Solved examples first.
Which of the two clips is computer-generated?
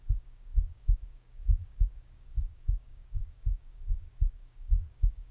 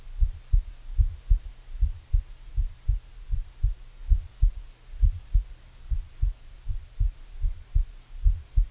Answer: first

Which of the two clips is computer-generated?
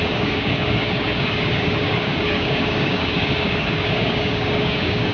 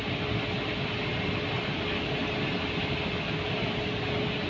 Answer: first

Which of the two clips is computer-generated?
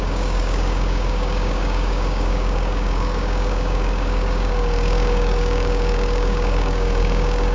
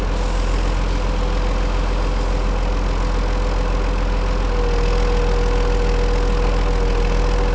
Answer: first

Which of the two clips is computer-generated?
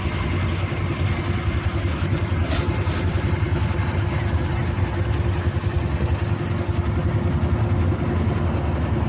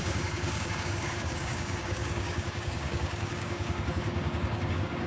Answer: second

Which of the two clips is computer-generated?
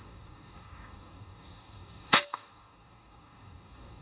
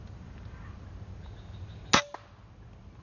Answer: first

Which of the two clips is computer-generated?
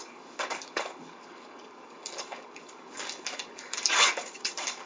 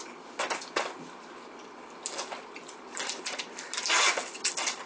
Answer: first